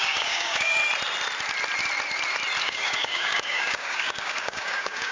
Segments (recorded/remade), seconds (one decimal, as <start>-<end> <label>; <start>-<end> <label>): 0.0-0.8 remade; 0.8-2.6 recorded; 2.6-5.1 remade